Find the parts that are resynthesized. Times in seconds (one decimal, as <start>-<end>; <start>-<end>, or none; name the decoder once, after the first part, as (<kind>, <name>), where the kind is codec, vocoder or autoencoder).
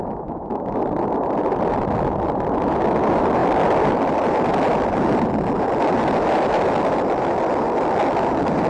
0.0-0.8 (autoencoder, DAC-VAE)